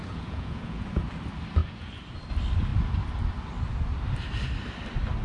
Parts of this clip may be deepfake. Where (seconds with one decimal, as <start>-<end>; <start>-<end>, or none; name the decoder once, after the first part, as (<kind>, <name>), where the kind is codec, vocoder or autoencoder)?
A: 0.0-1.0 (vocoder, Vocos)